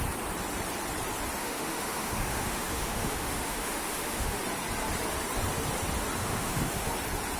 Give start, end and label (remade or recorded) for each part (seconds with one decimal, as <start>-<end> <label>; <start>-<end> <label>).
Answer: 0.0-1.4 recorded; 1.4-4.4 remade; 4.4-6.2 recorded; 6.2-6.9 remade; 6.9-7.4 recorded